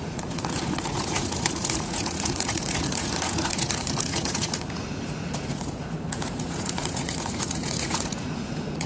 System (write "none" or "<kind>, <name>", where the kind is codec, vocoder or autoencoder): vocoder, Vocos